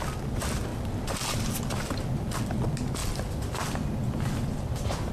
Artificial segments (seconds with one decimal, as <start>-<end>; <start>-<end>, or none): 0.7-2.4; 3.0-5.1